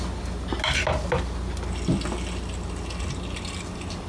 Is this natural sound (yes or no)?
yes